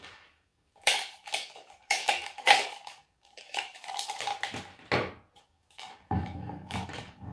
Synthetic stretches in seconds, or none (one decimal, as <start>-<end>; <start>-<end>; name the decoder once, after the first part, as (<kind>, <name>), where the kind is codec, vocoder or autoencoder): 0.0-4.3 (codec, DAC); 5.4-7.3